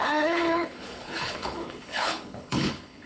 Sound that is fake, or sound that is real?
fake